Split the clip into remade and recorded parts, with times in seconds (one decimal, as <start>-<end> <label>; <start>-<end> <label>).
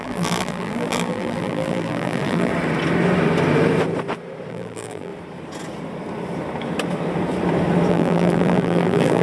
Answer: 0.0-2.5 remade; 2.5-4.5 recorded; 4.5-5.1 remade; 5.1-7.9 recorded; 7.9-9.2 remade